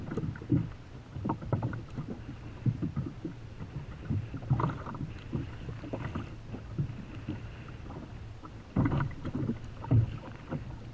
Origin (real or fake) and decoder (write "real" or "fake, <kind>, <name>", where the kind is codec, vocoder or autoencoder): real